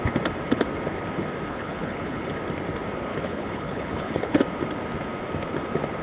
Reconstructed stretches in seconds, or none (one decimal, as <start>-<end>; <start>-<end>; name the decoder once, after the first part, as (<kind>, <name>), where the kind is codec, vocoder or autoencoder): 1.5-2.3 (codec, HILCodec); 3.1-4.4